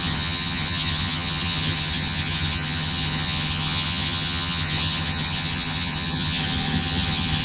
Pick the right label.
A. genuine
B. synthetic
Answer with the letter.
B